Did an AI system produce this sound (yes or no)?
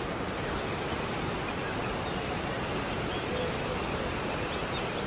no